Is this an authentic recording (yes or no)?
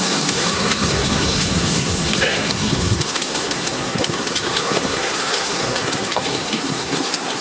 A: no